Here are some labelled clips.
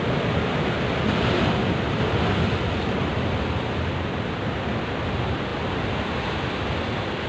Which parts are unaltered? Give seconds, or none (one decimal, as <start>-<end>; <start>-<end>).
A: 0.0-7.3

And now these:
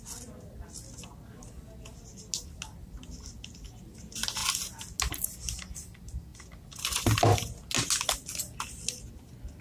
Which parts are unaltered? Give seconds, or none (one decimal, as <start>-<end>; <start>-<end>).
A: 0.0-9.6

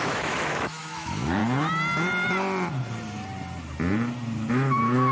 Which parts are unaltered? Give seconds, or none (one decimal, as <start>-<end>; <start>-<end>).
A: 1.4-4.5